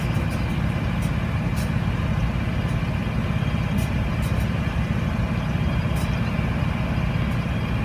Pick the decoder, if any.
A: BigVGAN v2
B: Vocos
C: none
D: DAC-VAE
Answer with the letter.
C